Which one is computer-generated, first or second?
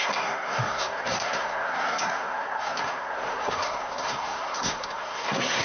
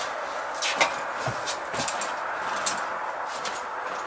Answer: first